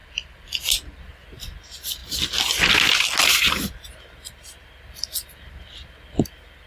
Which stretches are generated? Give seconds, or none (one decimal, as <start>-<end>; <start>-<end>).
0.0-1.0